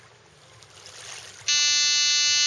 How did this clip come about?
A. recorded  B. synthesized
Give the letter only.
A